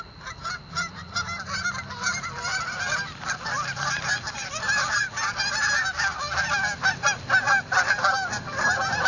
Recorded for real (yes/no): no